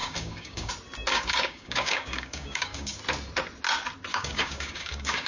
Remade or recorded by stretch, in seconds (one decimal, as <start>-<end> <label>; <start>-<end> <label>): 0.0-0.7 remade; 0.7-1.1 recorded; 1.1-3.0 remade; 3.0-4.1 recorded; 4.1-5.3 remade